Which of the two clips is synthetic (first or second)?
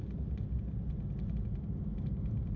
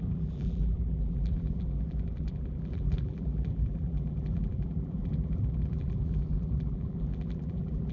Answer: second